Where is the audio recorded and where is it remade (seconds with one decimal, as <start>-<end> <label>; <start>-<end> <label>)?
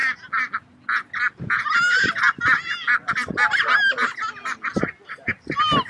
0.0-5.9 recorded